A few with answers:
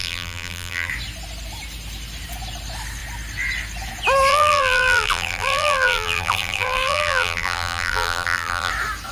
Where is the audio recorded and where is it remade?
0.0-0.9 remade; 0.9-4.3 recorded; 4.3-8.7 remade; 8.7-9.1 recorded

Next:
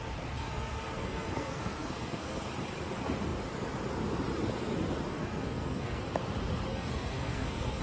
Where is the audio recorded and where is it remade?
0.0-0.4 recorded; 0.4-2.5 remade; 2.5-5.1 recorded; 5.1-6.0 remade; 6.0-6.7 recorded; 6.7-7.8 remade